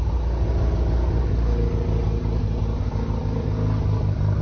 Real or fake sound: real